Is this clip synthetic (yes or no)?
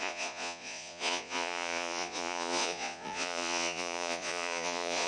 yes